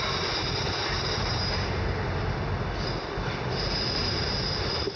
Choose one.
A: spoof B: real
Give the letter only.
B